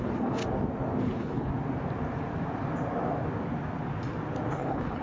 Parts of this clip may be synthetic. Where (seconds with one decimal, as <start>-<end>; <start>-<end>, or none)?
0.0-0.4; 1.0-1.5; 4.5-5.0